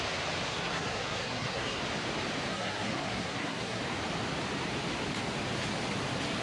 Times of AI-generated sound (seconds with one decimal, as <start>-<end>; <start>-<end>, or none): 0.5-1.8; 2.5-3.8